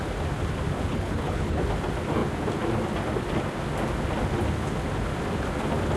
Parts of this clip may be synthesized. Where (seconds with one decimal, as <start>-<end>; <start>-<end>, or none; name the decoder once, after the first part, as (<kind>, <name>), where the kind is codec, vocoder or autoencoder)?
0.9-1.6 (codec, HILCodec)

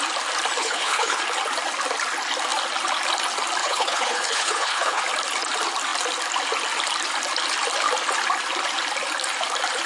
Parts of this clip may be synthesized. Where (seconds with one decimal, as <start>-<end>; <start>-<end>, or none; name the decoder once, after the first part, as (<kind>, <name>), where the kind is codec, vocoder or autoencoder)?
0.6-1.2 (codec, HILCodec); 3.6-5.0

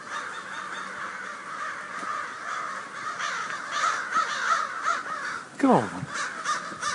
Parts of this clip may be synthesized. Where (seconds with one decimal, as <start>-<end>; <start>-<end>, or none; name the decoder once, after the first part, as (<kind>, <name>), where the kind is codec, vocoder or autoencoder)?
none

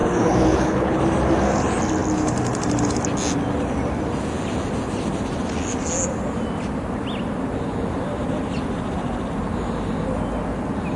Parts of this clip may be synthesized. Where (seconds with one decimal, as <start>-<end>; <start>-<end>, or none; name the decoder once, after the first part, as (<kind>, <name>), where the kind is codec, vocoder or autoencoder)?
0.0-1.0 (codec, HILCodec)

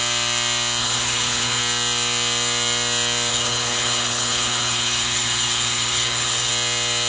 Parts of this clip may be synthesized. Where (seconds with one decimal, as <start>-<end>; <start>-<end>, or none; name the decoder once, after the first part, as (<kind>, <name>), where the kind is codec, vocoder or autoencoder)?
0.8-1.6 (codec, HILCodec); 3.3-6.5